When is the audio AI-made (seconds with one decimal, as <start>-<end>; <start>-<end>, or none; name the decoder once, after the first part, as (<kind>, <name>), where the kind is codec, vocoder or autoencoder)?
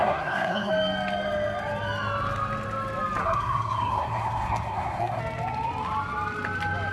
0.0-0.7 (codec, SNAC); 3.2-5.2